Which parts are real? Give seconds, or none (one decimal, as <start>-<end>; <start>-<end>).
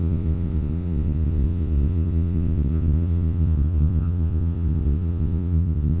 none